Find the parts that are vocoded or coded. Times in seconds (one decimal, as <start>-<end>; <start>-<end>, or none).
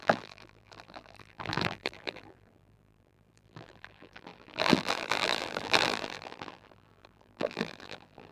0.0-8.3